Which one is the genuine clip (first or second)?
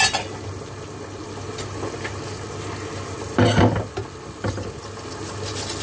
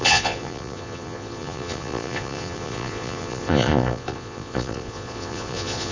first